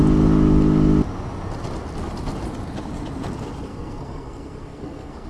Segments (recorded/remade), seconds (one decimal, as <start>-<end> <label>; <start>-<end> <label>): 0.0-3.7 recorded; 3.7-5.3 remade